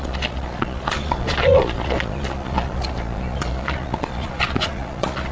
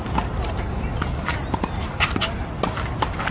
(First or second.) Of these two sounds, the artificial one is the first